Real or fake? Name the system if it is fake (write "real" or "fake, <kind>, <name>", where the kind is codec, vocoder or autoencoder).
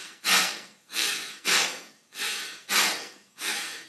fake, codec, SNAC